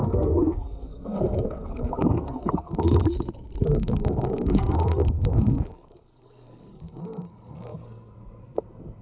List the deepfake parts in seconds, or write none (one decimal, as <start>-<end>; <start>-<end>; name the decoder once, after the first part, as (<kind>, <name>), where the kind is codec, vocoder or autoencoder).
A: 0.0-3.0 (codec, SNAC); 3.7-9.0